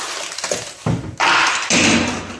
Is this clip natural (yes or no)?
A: yes